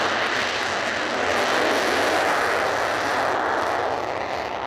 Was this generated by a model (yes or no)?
no